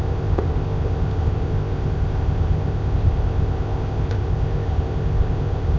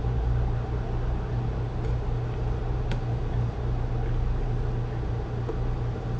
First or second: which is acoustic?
second